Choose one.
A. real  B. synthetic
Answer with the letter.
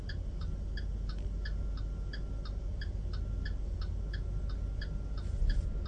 A